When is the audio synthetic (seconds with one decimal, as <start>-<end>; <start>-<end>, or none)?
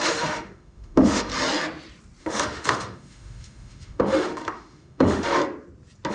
0.0-1.3; 2.2-5.4